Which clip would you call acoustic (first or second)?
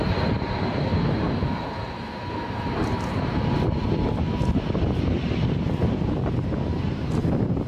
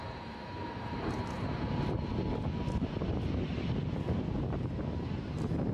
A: second